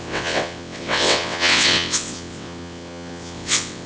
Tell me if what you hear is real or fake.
fake